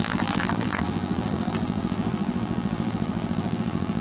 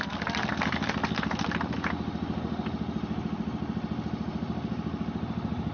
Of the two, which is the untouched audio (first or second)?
second